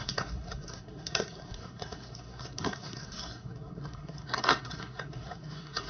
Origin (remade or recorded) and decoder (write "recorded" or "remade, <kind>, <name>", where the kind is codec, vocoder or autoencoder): remade, codec, SNAC